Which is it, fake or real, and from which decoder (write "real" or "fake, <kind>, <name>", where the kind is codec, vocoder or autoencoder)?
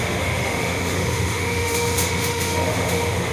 fake, autoencoder, DAC-VAE